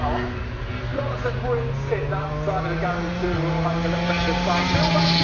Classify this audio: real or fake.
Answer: real